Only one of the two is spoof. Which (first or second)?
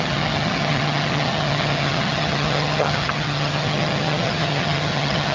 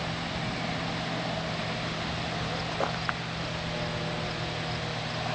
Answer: first